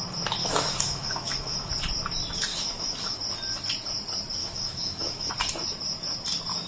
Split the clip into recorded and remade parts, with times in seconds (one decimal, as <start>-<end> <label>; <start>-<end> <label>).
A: 0.0-0.4 recorded; 0.4-1.7 remade; 1.7-2.5 recorded; 2.5-3.2 remade; 3.2-4.4 recorded; 4.4-5.3 remade; 5.3-6.7 recorded